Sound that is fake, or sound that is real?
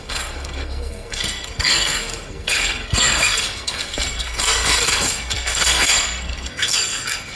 fake